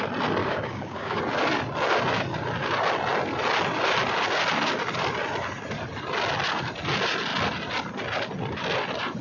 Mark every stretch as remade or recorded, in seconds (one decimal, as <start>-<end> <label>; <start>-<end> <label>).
0.0-0.4 recorded; 0.4-1.2 remade; 1.2-9.2 recorded